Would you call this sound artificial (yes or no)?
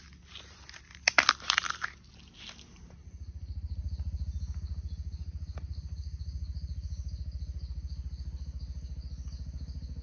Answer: no